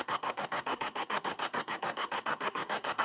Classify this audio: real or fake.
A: fake